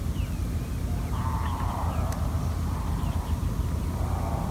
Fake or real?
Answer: real